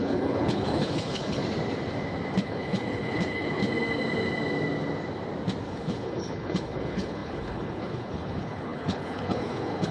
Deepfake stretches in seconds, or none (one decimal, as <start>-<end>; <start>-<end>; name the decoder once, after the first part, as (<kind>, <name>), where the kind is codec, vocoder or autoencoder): 0.0-1.4 (codec, HILCodec); 2.4-3.6; 5.6-9.9